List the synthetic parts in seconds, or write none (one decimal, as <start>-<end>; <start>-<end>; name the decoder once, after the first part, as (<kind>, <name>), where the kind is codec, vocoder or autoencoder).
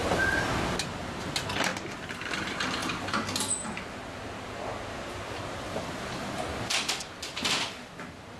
none